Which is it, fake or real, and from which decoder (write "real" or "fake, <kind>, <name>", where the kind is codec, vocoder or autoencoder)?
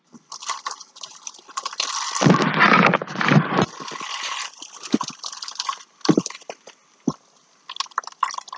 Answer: real